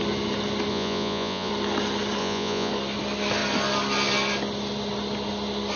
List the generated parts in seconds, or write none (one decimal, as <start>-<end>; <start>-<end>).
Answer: 0.7-1.5; 2.2-2.7